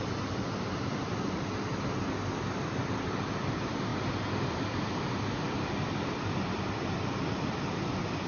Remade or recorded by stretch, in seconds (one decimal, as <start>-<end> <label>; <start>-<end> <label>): 0.0-8.3 recorded